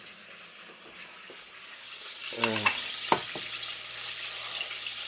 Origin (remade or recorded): recorded